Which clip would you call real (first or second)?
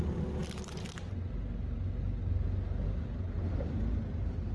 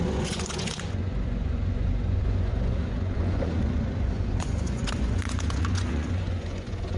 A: first